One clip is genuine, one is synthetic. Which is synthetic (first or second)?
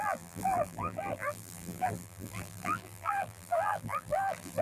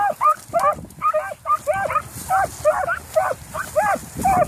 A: first